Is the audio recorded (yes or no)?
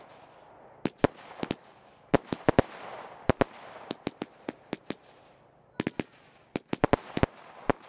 yes